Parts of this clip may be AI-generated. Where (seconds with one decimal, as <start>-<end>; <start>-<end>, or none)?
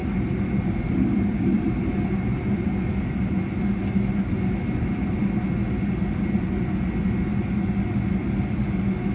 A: none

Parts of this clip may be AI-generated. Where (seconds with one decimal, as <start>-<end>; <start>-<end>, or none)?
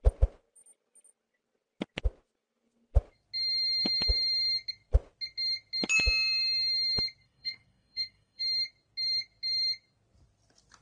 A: 7.2-8.4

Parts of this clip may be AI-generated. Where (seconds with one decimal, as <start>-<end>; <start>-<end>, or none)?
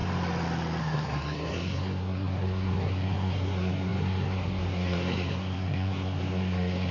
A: 0.8-6.9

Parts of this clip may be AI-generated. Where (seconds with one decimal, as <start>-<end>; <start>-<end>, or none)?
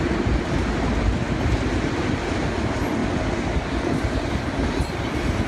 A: none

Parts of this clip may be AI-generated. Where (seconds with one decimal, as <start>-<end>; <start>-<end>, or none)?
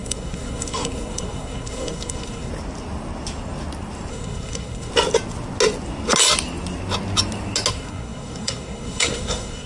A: 0.0-2.5; 4.1-4.9; 7.7-9.7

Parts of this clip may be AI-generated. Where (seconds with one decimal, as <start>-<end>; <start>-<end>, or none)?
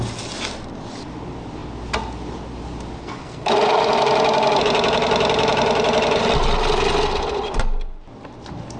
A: 3.0-3.5